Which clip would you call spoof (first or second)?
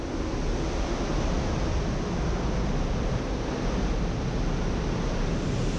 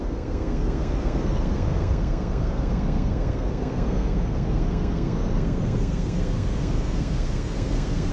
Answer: second